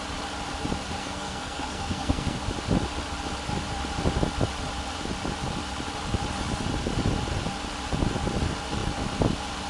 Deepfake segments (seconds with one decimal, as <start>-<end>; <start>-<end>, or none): 1.0-2.4